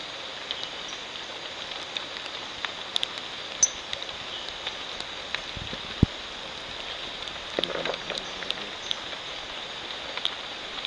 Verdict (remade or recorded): recorded